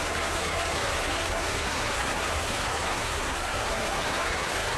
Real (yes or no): no